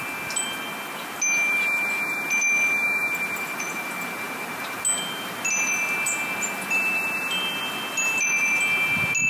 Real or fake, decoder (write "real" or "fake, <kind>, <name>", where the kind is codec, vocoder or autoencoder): real